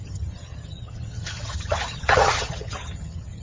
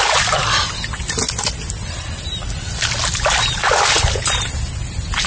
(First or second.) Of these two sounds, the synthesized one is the first